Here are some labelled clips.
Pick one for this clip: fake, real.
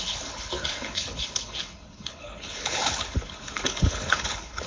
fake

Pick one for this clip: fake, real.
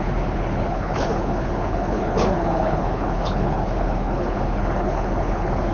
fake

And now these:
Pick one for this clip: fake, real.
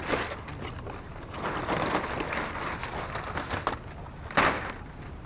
real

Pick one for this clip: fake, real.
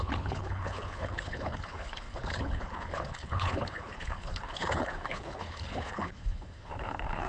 fake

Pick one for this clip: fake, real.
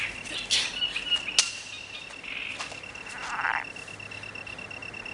real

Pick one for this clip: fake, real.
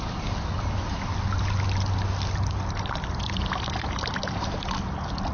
real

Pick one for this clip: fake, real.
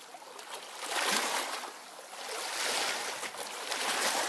real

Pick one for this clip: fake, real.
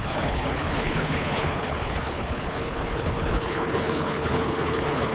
fake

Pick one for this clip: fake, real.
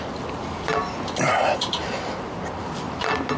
real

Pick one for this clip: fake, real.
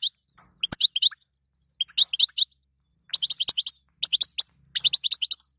real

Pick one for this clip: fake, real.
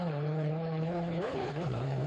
fake